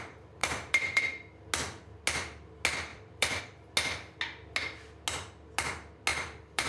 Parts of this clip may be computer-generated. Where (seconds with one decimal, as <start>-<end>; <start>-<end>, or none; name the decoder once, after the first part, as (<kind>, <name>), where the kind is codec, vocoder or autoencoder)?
0.4-1.0 (vocoder, BigVGAN v2); 2.9-3.4; 6.1-6.7